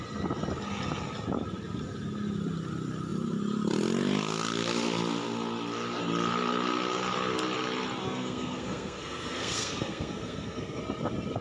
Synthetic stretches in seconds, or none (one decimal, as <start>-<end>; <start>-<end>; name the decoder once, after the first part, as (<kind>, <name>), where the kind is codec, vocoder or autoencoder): 8.0-10.8 (codec, SNAC)